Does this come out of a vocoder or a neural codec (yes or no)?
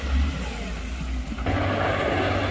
no